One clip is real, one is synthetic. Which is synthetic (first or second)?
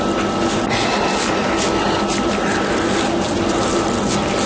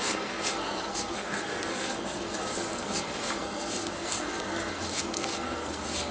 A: second